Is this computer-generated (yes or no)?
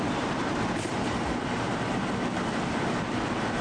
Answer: no